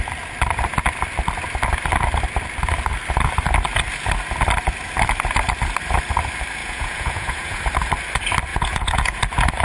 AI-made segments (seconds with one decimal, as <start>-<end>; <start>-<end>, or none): 6.6-7.6; 8.5-9.2